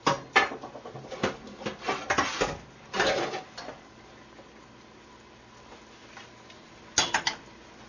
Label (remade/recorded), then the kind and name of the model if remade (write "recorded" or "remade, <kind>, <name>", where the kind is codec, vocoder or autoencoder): recorded